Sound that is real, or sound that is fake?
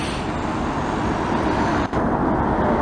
real